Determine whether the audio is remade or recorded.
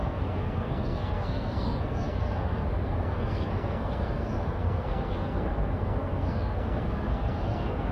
remade